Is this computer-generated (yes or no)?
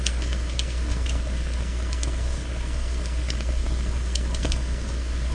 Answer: yes